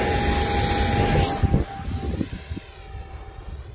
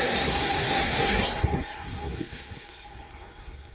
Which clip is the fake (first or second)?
second